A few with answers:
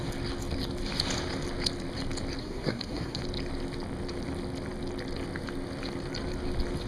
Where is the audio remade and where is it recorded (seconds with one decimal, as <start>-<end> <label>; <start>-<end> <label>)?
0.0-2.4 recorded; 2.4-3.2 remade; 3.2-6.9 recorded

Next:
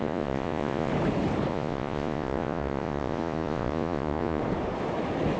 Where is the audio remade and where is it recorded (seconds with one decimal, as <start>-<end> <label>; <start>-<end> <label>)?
0.0-0.9 remade; 0.9-1.5 recorded; 1.5-4.4 remade; 4.4-5.4 recorded

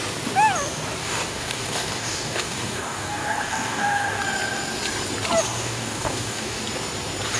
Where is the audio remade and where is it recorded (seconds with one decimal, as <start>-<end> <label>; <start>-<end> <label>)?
0.0-1.0 recorded; 1.0-4.2 remade; 4.2-5.6 recorded; 5.6-6.6 remade; 6.6-7.4 recorded